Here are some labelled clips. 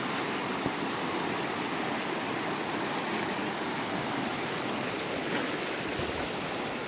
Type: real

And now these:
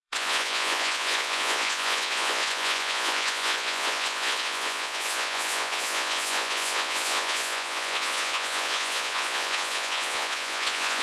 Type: fake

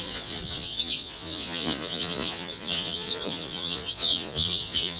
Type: fake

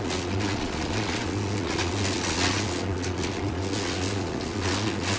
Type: fake